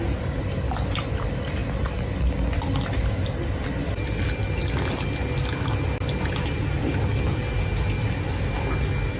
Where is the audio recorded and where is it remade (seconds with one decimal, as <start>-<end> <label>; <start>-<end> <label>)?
0.0-9.2 recorded